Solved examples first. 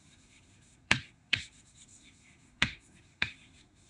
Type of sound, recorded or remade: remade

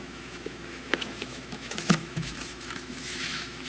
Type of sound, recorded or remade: remade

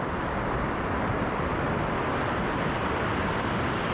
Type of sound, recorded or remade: recorded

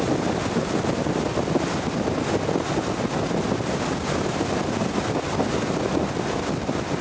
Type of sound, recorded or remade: recorded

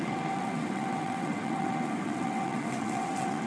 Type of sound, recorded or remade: remade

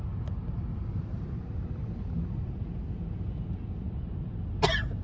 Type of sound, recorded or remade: recorded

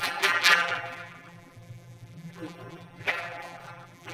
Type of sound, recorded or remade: remade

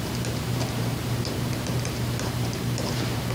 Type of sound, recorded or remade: remade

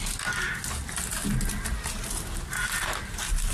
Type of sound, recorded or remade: recorded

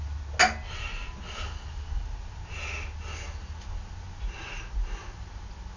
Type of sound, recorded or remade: recorded